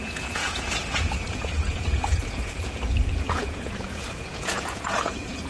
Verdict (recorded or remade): remade